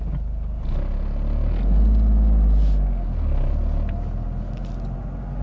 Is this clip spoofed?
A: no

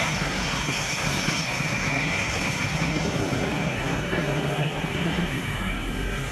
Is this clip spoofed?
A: yes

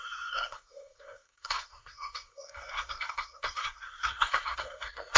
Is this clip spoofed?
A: yes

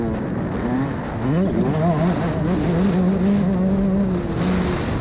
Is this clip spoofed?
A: no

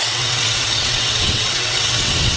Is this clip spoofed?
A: yes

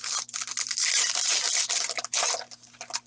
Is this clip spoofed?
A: no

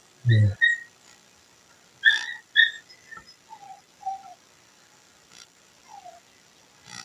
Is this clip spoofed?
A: yes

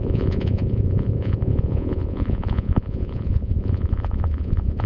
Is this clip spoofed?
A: yes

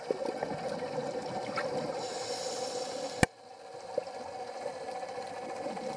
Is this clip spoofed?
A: no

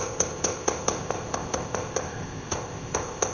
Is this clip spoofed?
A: yes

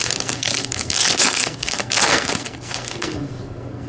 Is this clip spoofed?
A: yes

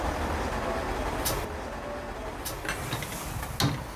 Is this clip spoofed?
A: no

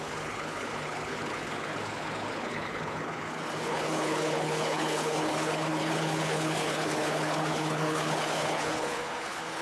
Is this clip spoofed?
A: yes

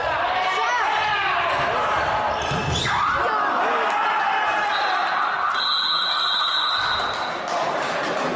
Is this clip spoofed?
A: no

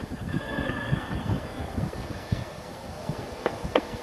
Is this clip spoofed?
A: yes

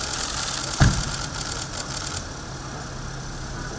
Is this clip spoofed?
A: no